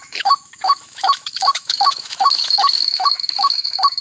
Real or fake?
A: fake